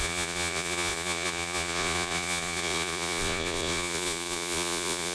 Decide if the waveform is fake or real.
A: fake